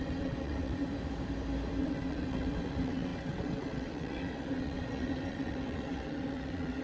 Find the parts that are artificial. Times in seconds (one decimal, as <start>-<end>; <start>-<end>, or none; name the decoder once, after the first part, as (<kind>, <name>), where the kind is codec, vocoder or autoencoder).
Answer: 0.0-0.9 (vocoder, WaveNeXt); 1.8-6.8